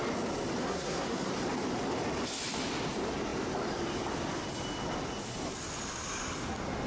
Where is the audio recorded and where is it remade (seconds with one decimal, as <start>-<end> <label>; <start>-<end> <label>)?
0.0-0.6 recorded; 0.6-1.3 remade; 1.3-6.9 recorded